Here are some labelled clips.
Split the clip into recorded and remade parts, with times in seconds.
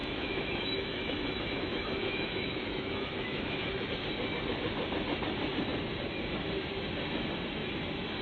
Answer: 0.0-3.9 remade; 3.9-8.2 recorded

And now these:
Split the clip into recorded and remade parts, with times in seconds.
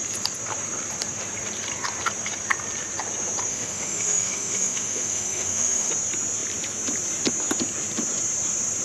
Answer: 0.0-3.5 recorded; 3.5-5.9 remade; 5.9-8.8 recorded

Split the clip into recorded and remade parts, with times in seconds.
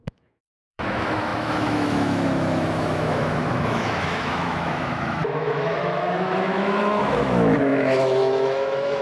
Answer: 0.0-9.0 remade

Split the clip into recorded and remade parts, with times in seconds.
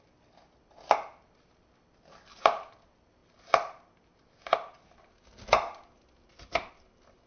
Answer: 0.0-7.3 recorded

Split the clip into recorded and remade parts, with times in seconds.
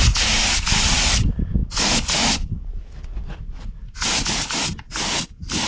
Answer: 0.0-5.7 recorded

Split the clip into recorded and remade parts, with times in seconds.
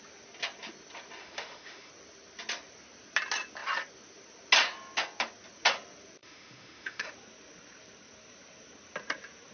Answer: 0.0-1.2 recorded; 1.2-1.9 remade; 1.9-6.2 recorded; 6.2-7.1 remade; 7.1-9.5 recorded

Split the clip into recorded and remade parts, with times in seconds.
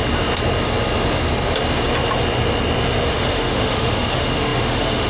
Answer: 0.0-3.1 recorded; 3.1-5.1 remade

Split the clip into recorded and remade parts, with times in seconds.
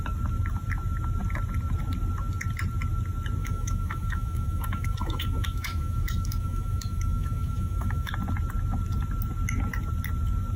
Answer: 0.0-3.4 recorded; 3.4-8.1 remade; 8.1-10.6 recorded